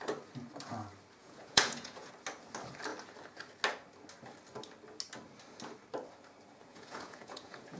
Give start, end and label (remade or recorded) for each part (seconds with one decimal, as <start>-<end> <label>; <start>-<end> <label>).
0.0-1.2 recorded; 1.2-2.1 remade; 2.1-6.7 recorded; 6.7-7.8 remade